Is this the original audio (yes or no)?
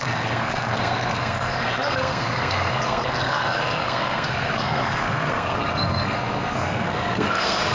no